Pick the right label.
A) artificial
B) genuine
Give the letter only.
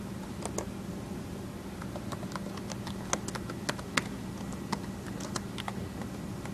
B